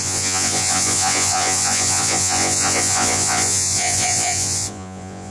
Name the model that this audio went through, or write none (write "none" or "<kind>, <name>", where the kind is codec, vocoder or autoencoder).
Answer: vocoder, Vocos